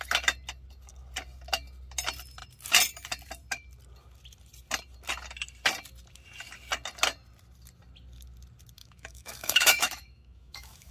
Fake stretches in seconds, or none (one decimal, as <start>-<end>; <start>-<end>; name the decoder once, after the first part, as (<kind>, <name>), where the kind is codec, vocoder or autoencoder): 8.8-10.9 (autoencoder, DAC-VAE)